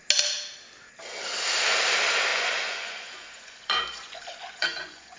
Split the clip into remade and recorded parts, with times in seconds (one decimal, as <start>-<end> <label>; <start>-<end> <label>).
0.0-2.3 recorded; 2.3-5.2 remade